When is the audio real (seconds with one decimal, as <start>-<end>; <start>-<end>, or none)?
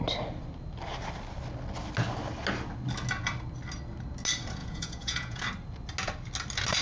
0.0-4.6; 5.4-6.8